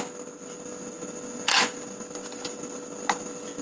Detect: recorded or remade recorded